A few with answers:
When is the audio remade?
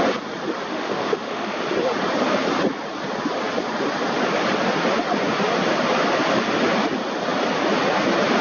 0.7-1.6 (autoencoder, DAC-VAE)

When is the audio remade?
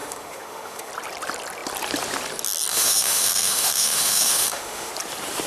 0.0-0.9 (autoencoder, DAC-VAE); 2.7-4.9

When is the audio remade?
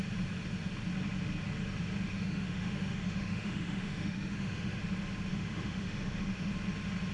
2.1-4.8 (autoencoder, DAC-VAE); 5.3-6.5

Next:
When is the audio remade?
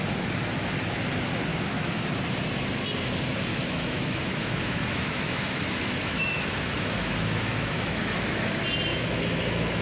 1.5-2.0 (autoencoder, DAC-VAE); 3.5-8.5; 8.9-9.8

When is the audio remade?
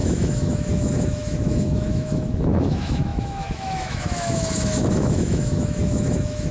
0.0-6.5 (autoencoder, DAC-VAE)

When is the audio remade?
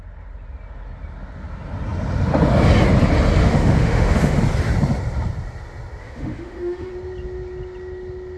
3.4-4.4 (autoencoder, DAC-VAE); 6.0-6.9